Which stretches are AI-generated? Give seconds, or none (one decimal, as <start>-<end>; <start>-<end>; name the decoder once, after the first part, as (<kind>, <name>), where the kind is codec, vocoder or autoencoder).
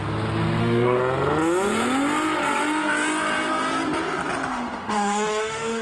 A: 0.6-1.0 (autoencoder, DAC-VAE); 4.5-5.8